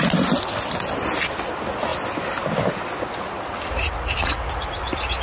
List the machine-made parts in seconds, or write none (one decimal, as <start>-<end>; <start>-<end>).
none

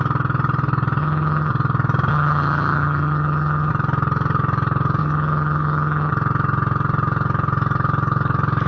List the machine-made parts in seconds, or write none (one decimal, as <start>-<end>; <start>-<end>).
1.0-1.5; 2.1-3.7; 5.0-6.1

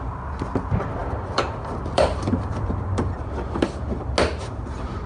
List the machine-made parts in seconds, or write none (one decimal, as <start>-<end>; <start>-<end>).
1.0-4.1

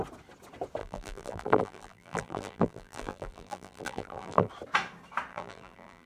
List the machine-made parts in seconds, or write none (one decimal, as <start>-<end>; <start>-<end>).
0.8-4.5; 5.3-6.1

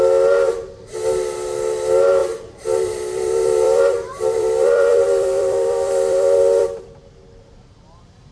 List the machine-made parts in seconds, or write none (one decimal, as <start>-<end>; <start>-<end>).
2.2-7.2